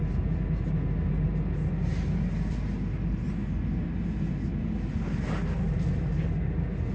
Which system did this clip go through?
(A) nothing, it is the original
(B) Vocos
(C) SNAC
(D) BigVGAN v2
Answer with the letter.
A